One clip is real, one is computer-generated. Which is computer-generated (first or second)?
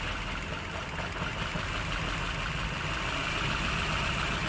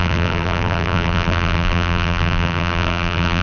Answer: second